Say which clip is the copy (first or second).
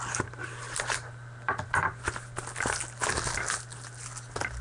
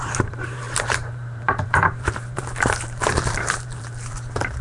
second